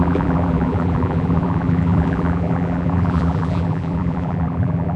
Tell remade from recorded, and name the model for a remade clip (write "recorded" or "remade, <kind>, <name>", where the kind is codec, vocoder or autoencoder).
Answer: remade, vocoder, BigVGAN v2